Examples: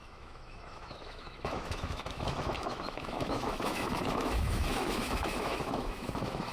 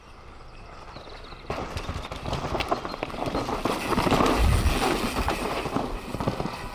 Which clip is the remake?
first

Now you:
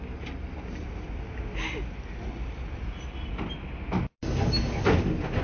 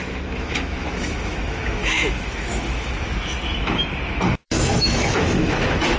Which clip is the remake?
second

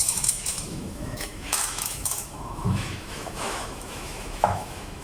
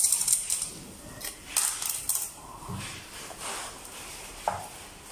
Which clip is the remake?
first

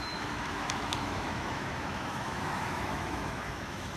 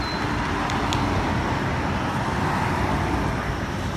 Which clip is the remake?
first